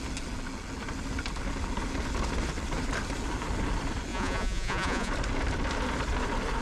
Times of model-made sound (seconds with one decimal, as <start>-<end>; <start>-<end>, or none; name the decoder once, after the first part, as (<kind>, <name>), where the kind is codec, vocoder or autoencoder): 4.1-5.1 (vocoder, Vocos)